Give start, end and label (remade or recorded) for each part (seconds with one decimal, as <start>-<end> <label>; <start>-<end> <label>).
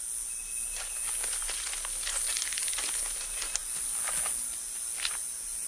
0.0-5.7 recorded